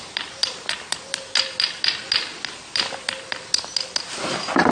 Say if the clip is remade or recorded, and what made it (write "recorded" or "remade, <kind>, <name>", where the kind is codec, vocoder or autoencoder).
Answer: recorded